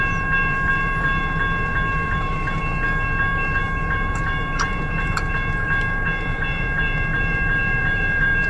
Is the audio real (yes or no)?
no